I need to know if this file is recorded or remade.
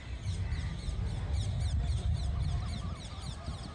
recorded